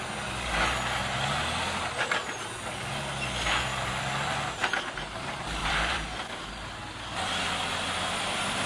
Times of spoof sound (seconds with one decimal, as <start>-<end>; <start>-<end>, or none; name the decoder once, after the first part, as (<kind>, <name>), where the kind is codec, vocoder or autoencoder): 3.7-4.8 (vocoder, BigVGAN v2); 5.6-7.5